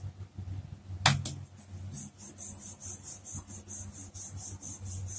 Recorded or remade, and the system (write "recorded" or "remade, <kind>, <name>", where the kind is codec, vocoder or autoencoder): recorded